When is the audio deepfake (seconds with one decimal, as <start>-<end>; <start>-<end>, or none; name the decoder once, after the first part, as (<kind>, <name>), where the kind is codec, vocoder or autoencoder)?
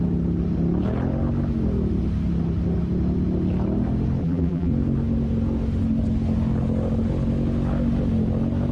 4.2-4.7 (vocoder, BigVGAN v2)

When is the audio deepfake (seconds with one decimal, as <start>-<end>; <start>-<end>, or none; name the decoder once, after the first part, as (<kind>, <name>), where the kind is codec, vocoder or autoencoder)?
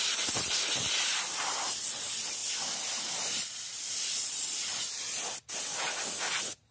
2.4-3.0 (vocoder, BigVGAN v2)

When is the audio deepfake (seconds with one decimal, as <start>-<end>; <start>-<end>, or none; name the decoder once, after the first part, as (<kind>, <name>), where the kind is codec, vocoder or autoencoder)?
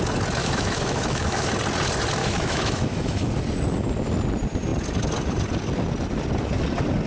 0.4-1.5 (autoencoder, DAC-VAE); 2.2-3.3